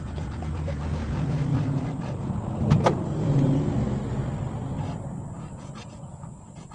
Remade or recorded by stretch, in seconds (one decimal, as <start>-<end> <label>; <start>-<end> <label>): 0.0-1.4 remade; 1.4-5.4 recorded; 5.4-6.7 remade

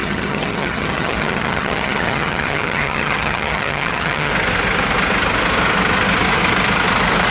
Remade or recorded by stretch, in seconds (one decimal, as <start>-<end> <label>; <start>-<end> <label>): 0.0-4.3 remade; 4.3-7.3 recorded